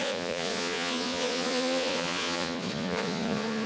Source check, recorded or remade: remade